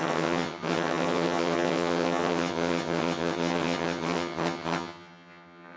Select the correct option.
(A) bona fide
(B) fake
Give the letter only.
B